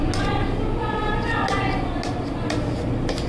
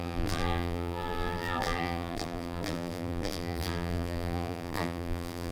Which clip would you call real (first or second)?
first